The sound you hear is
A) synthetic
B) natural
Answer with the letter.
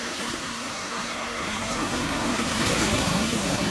A